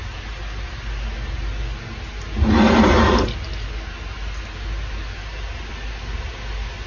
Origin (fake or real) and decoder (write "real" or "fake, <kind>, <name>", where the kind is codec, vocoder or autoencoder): real